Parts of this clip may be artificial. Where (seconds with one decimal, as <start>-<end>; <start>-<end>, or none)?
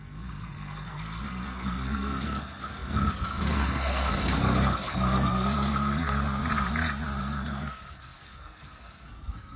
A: 0.0-6.4; 7.2-9.6